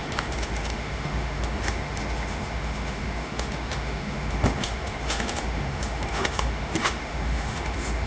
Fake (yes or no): yes